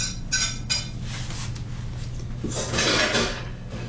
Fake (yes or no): no